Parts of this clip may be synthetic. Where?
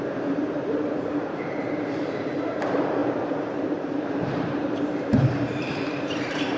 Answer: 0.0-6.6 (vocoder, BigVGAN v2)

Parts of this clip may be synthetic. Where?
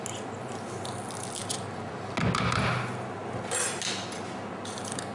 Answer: none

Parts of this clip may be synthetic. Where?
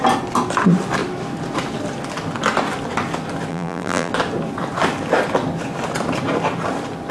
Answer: 3.5-4.1 (vocoder, BigVGAN v2)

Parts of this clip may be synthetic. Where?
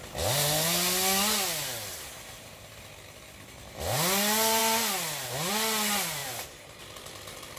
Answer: 6.2-6.8 (vocoder, BigVGAN v2)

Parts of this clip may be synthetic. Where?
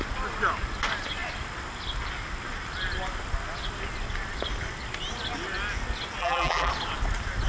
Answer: 6.2-6.7 (vocoder, BigVGAN v2)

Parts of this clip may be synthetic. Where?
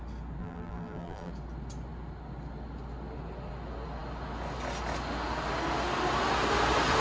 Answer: 0.4-1.3 (vocoder, BigVGAN v2)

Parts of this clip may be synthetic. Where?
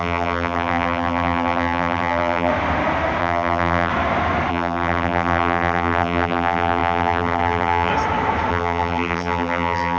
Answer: 0.0-2.5 (vocoder, BigVGAN v2); 3.2-3.9; 4.5-7.9; 8.5-10.0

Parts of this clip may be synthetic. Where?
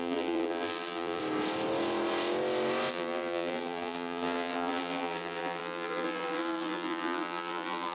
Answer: 0.0-1.2 (vocoder, BigVGAN v2); 2.9-7.9